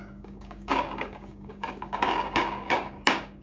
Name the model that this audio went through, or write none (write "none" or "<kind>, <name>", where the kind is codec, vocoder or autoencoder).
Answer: codec, DAC